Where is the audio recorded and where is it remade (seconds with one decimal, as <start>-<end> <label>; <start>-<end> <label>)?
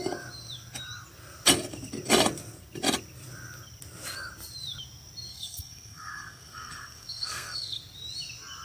0.0-5.3 recorded; 5.3-7.8 remade; 7.8-8.6 recorded